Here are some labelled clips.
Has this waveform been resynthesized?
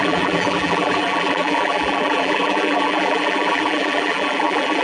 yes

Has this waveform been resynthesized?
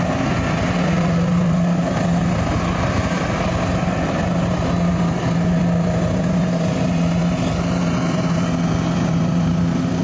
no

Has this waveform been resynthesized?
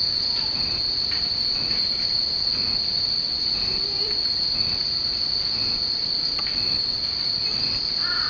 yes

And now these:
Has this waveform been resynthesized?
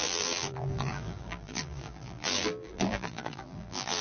yes